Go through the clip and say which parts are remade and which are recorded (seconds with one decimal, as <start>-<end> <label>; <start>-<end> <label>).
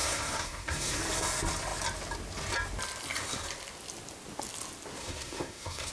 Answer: 0.0-1.0 remade; 1.0-5.0 recorded; 5.0-5.9 remade